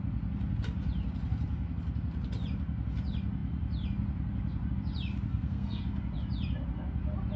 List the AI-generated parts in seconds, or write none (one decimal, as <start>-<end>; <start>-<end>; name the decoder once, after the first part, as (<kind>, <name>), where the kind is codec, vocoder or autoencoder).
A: 5.3-5.8 (codec, SNAC)